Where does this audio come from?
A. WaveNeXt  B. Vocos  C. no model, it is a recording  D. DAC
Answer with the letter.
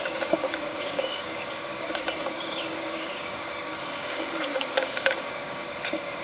D